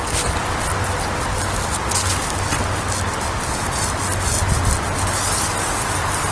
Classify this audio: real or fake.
real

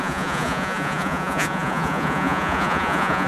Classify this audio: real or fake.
fake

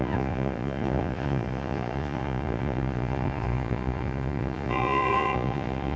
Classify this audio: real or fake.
fake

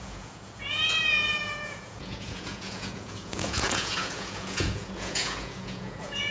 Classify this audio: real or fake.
fake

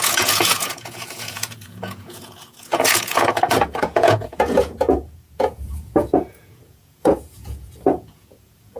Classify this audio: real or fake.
fake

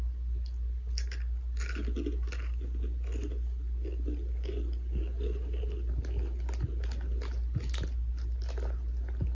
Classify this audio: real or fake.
real